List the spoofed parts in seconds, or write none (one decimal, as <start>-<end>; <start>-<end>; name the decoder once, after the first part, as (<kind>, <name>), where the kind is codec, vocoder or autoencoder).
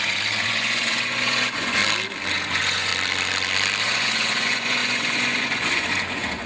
0.0-1.8 (vocoder, Vocos); 2.3-2.9; 3.8-6.5